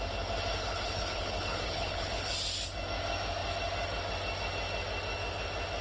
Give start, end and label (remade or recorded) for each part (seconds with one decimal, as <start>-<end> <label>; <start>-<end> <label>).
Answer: 0.0-0.6 recorded; 0.6-2.3 remade; 2.3-5.8 recorded